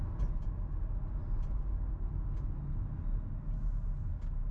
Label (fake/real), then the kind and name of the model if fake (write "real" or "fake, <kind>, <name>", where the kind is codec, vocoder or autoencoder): real